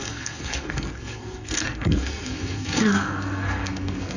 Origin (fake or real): fake